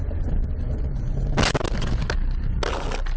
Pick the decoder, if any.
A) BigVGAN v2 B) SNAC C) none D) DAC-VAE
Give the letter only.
C